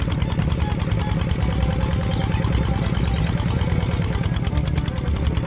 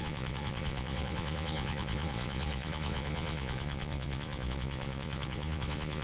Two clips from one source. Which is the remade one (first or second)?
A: second